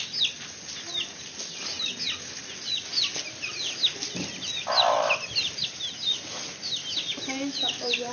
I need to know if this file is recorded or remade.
recorded